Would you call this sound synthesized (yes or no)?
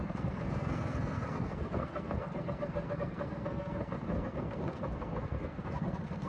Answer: yes